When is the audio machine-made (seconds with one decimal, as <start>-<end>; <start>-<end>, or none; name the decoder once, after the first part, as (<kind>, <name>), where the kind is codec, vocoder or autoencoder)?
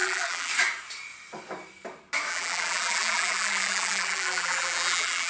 0.0-0.5 (vocoder, BigVGAN v2); 2.3-5.3